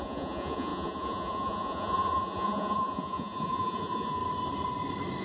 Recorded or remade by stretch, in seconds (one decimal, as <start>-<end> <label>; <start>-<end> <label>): 0.0-4.2 remade; 4.2-5.2 recorded